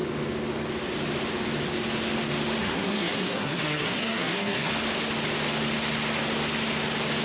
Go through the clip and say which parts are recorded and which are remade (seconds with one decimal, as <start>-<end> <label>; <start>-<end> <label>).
0.0-2.6 recorded; 2.6-4.7 remade; 4.7-7.2 recorded